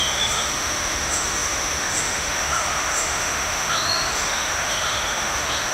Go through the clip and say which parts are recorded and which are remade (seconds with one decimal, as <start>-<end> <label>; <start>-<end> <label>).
0.0-5.7 remade